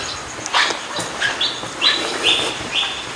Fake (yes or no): no